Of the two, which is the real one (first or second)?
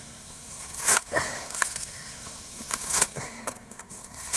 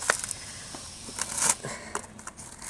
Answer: second